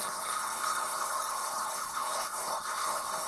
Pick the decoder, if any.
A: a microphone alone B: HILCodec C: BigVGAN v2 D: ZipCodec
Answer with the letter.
B